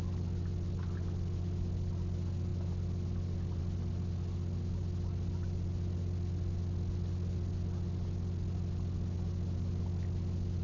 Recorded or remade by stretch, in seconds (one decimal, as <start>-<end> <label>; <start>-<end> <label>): 0.0-10.6 recorded